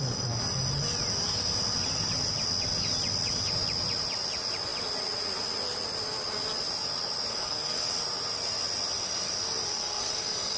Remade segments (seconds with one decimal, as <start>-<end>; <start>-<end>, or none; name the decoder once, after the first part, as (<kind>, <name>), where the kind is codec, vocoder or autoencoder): 7.3-7.9 (codec, SNAC); 9.7-10.6